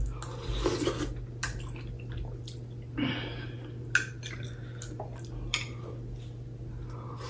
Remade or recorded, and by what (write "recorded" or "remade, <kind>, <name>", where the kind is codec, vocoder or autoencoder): recorded